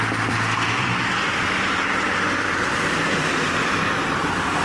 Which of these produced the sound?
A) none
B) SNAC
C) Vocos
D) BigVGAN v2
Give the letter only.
D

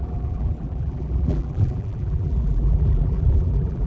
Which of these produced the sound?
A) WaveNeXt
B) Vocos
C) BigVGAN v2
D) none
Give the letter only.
C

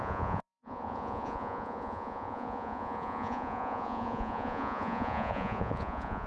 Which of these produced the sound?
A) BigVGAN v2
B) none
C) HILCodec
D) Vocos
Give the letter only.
D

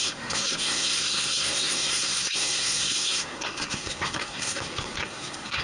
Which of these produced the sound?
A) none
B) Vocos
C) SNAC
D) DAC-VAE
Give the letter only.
C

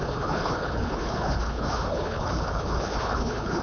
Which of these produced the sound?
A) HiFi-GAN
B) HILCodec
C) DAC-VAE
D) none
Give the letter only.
B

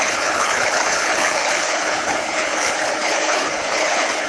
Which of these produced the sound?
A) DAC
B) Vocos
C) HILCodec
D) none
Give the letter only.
C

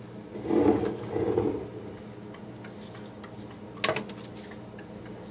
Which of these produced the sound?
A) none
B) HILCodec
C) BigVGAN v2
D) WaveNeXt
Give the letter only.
A